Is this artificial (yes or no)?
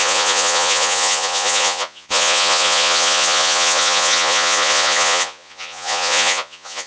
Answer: yes